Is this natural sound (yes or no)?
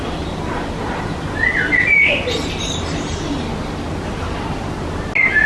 yes